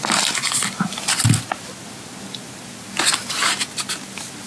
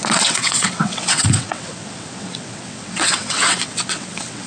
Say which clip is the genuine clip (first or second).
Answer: first